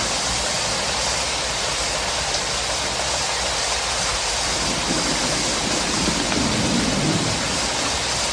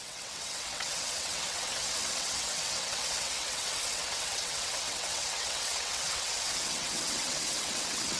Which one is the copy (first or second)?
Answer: second